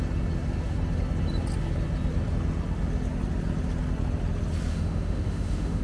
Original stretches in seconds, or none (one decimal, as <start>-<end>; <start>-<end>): 0.0-4.7